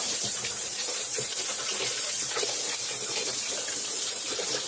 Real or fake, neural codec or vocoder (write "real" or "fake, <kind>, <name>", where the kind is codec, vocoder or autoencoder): fake, vocoder, BigVGAN v2